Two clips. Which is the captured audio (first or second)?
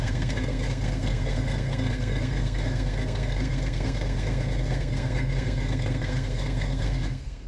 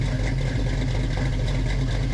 second